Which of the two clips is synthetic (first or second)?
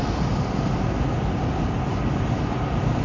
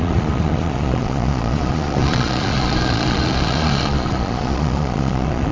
second